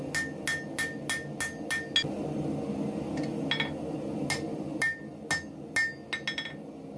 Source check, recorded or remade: recorded